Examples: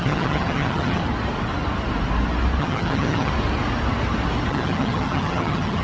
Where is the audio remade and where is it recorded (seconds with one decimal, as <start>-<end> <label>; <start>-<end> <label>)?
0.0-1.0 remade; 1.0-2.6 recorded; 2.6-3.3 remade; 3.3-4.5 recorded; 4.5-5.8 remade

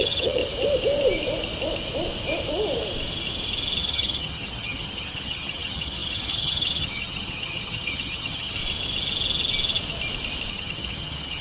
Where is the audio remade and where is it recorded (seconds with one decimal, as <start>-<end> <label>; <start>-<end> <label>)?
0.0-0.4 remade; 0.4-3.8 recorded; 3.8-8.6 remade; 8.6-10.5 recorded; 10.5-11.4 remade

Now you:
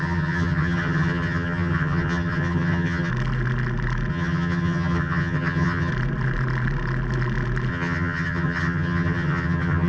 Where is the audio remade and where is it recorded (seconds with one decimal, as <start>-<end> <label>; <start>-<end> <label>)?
0.0-3.1 remade; 3.1-4.1 recorded; 4.1-5.9 remade; 5.9-7.7 recorded; 7.7-9.9 remade